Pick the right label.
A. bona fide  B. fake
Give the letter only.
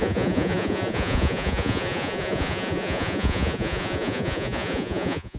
B